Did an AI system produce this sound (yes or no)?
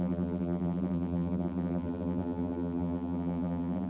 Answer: yes